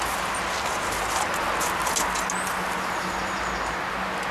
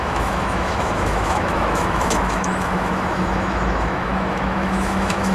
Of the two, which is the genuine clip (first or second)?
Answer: first